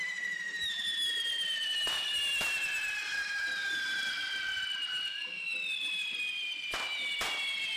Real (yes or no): yes